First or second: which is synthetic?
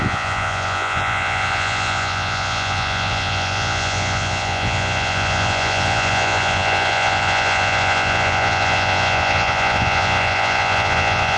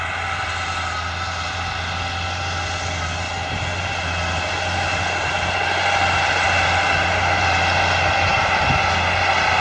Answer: first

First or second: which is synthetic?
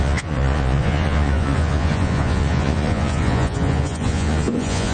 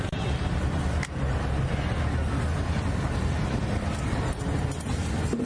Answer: first